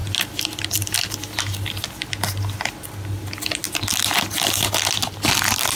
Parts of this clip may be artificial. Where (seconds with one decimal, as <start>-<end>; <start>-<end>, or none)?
none